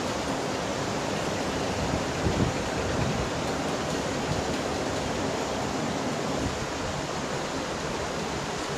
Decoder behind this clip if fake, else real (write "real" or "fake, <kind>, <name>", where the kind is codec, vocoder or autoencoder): real